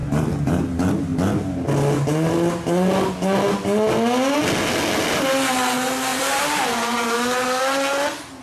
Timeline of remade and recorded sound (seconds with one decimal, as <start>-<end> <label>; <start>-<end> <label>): 0.0-6.1 recorded; 6.1-7.6 remade; 7.6-8.4 recorded